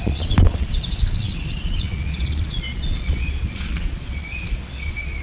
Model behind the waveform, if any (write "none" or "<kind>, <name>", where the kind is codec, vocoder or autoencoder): vocoder, Vocos